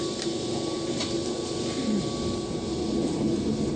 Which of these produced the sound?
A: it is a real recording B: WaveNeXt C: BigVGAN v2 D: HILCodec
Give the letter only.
A